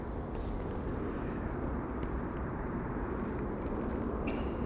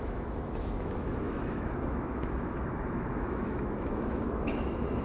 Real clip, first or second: first